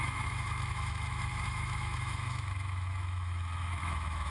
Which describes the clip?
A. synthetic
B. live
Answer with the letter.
A